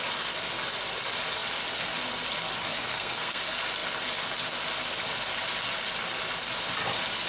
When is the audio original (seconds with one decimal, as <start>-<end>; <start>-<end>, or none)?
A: 0.0-2.7; 3.4-7.3